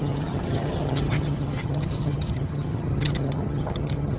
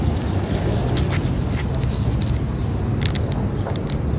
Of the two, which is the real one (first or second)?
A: second